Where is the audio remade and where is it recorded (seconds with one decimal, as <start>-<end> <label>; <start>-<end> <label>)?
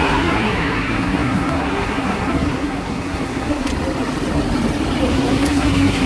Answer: 0.0-3.7 remade; 3.7-5.1 recorded; 5.1-6.1 remade